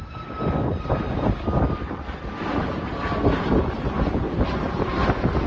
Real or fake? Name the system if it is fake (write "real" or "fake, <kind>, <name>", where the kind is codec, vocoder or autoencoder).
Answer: real